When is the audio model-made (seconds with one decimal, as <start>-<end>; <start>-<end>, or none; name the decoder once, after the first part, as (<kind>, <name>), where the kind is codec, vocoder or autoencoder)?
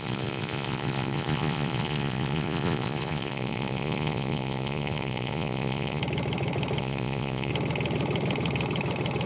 0.0-6.0 (vocoder, Vocos); 6.8-7.5